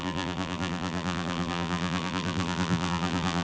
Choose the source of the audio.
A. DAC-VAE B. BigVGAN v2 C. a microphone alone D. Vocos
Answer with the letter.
B